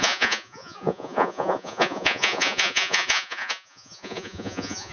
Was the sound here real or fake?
fake